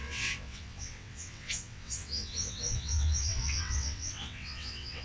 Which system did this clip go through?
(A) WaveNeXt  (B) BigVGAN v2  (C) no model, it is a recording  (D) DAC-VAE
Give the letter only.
A